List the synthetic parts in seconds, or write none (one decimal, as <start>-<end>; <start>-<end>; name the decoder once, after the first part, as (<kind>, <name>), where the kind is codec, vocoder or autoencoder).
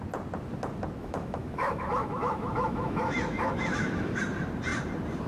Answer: 1.0-4.2 (autoencoder, DAC-VAE)